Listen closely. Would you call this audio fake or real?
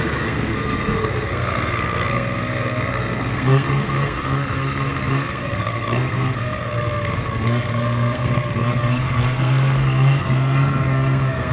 fake